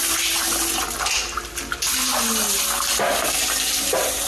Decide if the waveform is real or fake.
real